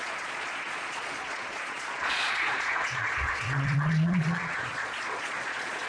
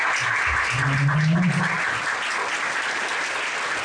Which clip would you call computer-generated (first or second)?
first